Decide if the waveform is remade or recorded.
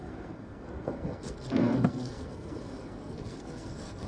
remade